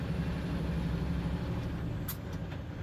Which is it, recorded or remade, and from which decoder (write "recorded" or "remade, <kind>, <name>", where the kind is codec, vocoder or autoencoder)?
recorded